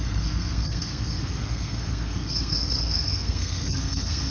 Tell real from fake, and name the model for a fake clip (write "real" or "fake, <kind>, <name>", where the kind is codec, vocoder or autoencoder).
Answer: fake, codec, SNAC